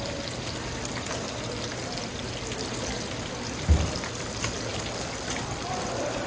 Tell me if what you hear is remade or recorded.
recorded